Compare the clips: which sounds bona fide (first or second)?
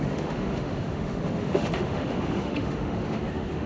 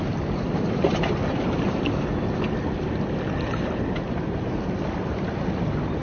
second